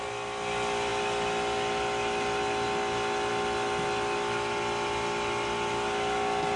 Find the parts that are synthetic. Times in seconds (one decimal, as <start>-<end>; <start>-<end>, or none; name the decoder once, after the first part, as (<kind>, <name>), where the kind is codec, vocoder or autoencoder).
none